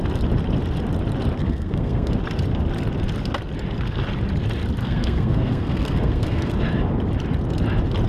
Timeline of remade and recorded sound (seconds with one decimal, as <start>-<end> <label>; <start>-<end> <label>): 0.0-1.4 recorded; 1.4-2.1 remade; 2.1-4.8 recorded; 4.8-6.5 remade; 6.5-8.1 recorded